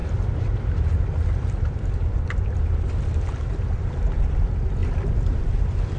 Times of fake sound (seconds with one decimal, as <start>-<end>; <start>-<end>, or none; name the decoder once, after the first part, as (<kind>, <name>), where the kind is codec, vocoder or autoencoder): 0.0-3.0 (vocoder, BigVGAN v2); 4.8-5.6